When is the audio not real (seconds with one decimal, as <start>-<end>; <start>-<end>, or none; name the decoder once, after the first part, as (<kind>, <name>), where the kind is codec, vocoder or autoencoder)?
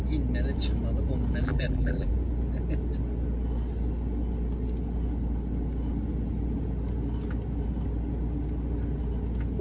1.4-2.1 (vocoder, BigVGAN v2)